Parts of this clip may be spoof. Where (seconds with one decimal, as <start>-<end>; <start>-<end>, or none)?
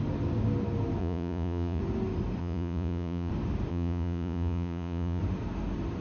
1.0-1.8; 2.4-3.3; 3.7-5.2